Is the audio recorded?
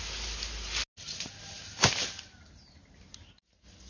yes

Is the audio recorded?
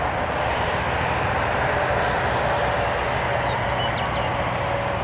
yes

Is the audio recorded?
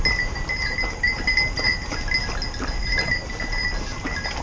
yes